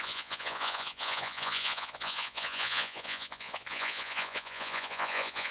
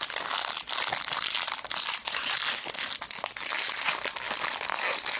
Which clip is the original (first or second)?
second